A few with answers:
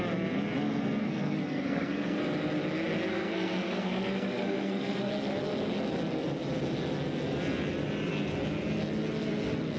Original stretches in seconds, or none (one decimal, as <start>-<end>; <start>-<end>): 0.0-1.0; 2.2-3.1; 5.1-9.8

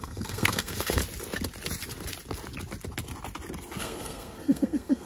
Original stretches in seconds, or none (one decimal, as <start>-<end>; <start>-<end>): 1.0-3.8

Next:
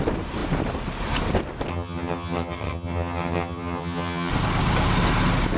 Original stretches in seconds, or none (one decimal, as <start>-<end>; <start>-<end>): 0.0-1.7; 4.3-5.6